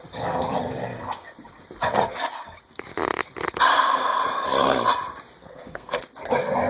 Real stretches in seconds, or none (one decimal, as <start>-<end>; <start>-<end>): 0.0-5.4; 6.0-6.7